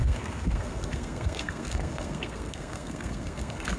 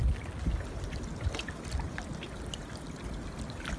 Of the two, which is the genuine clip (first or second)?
second